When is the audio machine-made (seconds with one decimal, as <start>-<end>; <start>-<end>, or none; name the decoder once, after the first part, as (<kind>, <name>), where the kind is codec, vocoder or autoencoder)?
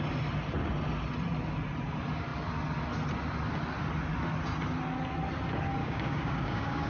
5.8-6.9 (codec, DAC)